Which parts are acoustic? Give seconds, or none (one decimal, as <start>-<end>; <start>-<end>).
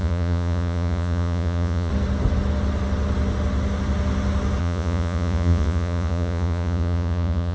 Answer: 1.9-4.6